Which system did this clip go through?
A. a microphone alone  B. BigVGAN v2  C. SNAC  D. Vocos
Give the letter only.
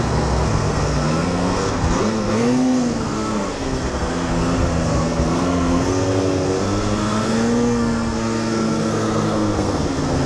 C